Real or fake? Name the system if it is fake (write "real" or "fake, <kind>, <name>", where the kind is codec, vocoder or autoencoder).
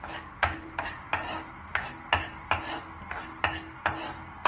real